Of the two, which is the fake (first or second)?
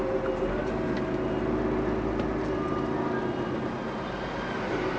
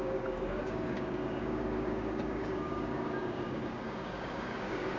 second